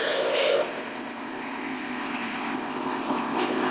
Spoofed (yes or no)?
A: yes